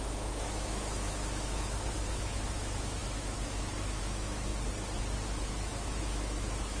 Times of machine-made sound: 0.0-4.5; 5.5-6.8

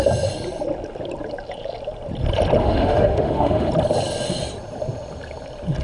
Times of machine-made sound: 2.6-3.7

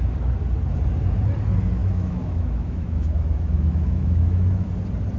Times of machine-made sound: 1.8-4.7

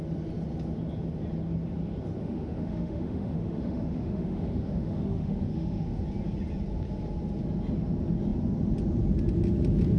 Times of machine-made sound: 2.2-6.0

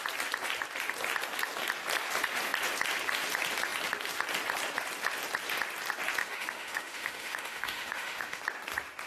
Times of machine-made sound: 6.2-8.4

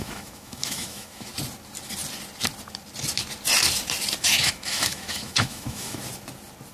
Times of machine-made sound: 0.0-1.3; 4.2-6.0

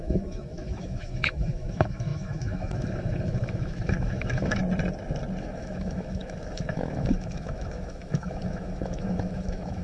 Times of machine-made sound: 0.0-4.6; 5.4-9.8